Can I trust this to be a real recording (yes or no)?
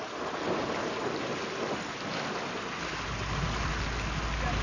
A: yes